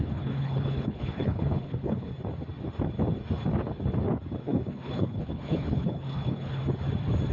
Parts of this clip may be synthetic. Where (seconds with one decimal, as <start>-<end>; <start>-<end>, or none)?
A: 0.0-2.1; 4.4-6.6